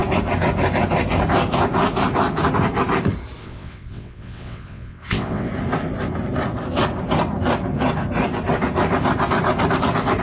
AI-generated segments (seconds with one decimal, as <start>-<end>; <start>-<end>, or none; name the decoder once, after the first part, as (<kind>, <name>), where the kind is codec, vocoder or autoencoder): 3.4-5.5 (vocoder, WaveNeXt)